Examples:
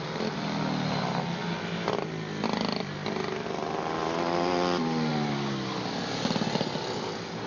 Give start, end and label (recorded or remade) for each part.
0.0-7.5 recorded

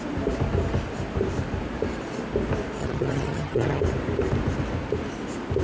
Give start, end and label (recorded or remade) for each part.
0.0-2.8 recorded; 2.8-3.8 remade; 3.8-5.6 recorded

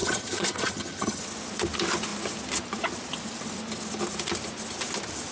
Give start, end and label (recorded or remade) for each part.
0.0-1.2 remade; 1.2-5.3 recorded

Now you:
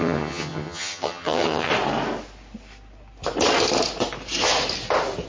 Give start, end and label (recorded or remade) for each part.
0.0-1.7 remade; 1.7-5.3 recorded

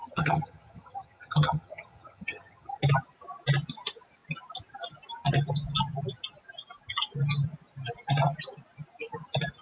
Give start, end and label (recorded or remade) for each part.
0.0-2.8 remade; 2.8-9.6 recorded